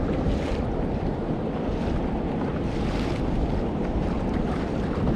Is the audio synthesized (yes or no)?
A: no